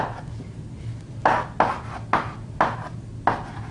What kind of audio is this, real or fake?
real